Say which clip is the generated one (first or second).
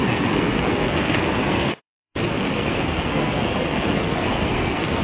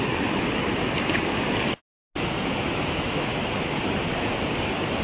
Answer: first